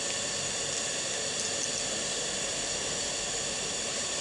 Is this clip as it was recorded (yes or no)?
yes